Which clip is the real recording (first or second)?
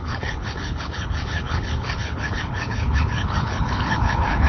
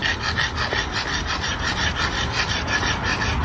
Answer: second